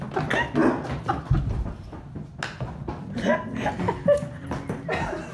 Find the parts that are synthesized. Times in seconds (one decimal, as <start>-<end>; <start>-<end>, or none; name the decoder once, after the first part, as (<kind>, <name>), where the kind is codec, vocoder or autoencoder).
none